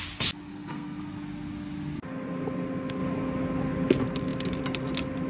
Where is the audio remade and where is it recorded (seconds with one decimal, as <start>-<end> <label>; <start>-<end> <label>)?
0.0-0.5 recorded; 0.5-1.0 remade; 1.0-5.3 recorded

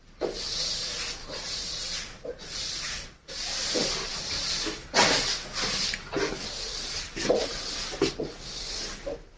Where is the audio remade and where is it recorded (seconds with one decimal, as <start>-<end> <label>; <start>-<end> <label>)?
0.0-1.2 recorded; 1.2-3.3 remade; 3.3-9.4 recorded

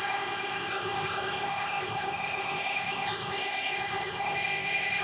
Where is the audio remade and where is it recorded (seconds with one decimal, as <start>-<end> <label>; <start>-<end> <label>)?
0.0-5.0 remade

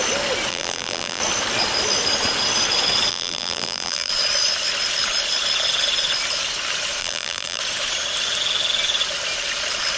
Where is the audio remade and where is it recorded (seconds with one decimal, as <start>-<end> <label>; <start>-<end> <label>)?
0.0-0.5 recorded; 0.5-1.2 remade; 1.2-3.1 recorded; 3.1-4.1 remade; 4.1-7.0 recorded; 7.0-7.6 remade; 7.6-10.0 recorded